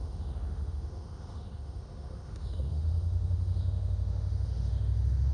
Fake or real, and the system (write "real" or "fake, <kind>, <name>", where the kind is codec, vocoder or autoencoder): fake, autoencoder, DAC-VAE